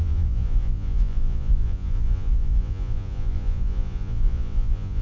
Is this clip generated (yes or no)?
yes